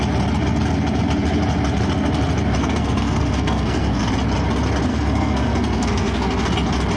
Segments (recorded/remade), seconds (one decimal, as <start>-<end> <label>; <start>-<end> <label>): 0.0-2.6 recorded; 2.6-4.1 remade; 4.1-4.9 recorded; 4.9-6.5 remade; 6.5-7.0 recorded